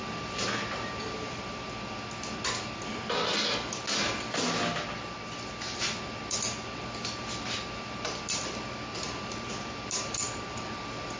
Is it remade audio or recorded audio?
recorded